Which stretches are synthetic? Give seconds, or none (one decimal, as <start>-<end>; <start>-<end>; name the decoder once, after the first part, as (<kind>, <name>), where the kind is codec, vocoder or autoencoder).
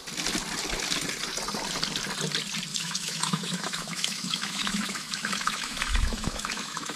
2.7-7.0 (autoencoder, DAC-VAE)